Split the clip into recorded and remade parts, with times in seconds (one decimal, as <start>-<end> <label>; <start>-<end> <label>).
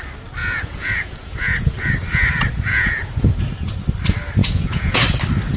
0.0-0.4 recorded; 0.4-1.9 remade; 1.9-2.7 recorded; 2.7-3.3 remade; 3.3-4.4 recorded; 4.4-5.0 remade; 5.0-5.6 recorded